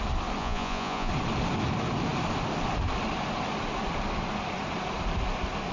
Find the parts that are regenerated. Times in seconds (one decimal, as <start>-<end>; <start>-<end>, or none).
0.4-1.1